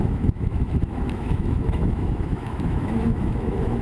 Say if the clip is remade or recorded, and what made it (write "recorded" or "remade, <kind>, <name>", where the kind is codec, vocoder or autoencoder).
remade, autoencoder, DAC-VAE